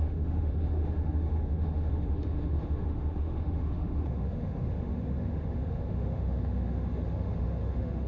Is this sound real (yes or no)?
no